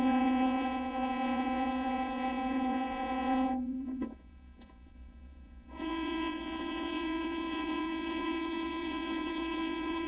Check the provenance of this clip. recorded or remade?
remade